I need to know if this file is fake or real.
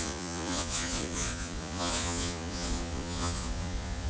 fake